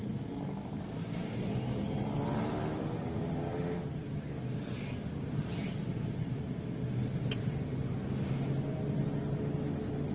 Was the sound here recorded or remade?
recorded